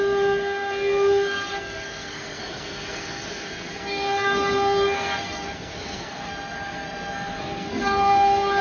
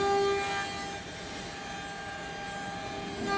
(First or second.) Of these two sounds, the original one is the second